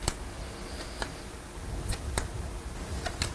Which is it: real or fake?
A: real